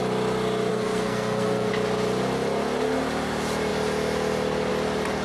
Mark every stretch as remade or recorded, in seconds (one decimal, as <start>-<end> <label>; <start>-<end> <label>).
0.0-0.7 recorded; 0.7-1.7 remade; 1.7-5.2 recorded